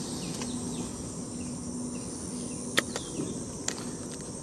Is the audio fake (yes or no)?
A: no